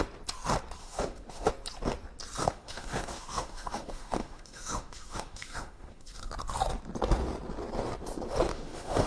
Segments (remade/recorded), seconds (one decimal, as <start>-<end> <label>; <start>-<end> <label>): 0.0-0.8 recorded; 0.8-1.5 remade; 1.5-2.4 recorded; 2.4-6.3 remade; 6.3-8.5 recorded; 8.5-9.1 remade